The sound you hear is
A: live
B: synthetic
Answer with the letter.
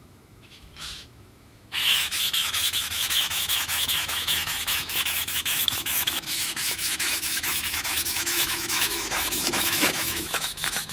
B